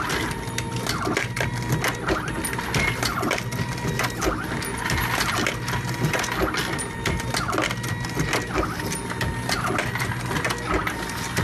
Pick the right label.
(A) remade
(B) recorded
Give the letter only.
B